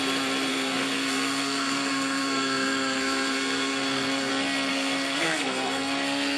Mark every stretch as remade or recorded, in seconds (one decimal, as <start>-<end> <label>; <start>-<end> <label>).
0.0-0.5 recorded; 0.5-4.3 remade; 4.3-4.7 recorded; 4.7-6.4 remade